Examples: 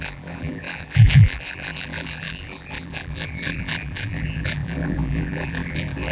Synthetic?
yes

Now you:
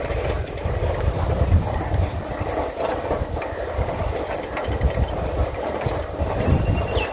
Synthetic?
yes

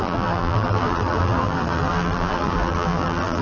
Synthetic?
yes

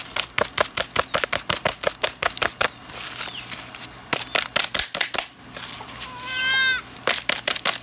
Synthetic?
no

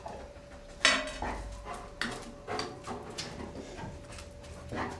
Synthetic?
no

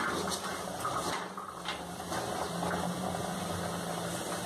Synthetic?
no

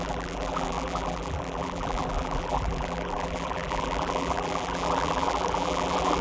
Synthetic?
yes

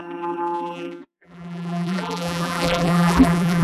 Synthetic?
yes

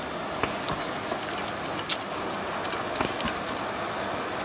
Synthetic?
no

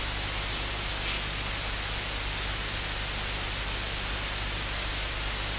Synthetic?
no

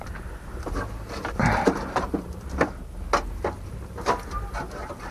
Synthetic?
no